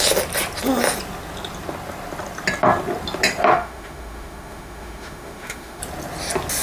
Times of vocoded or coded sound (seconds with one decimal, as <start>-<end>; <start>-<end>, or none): 3.5-5.8